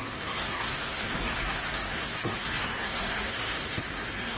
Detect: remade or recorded remade